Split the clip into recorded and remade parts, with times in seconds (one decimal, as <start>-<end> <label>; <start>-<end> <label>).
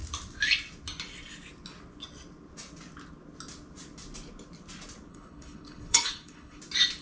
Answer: 0.0-5.1 recorded; 5.1-6.6 remade; 6.6-7.0 recorded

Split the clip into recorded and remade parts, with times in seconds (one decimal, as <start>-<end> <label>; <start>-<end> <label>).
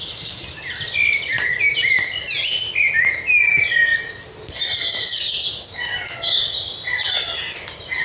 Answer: 0.0-8.0 recorded